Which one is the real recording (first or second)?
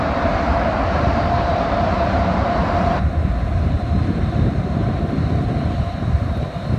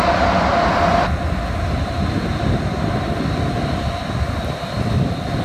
second